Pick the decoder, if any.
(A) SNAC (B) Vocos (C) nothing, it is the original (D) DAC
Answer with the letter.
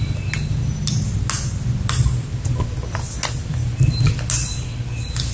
C